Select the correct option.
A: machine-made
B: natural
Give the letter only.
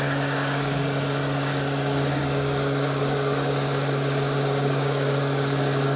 A